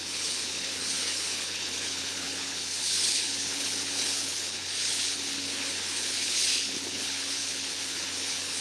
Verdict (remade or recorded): remade